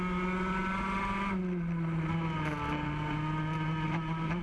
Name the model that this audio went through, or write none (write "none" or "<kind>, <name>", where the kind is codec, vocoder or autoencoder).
none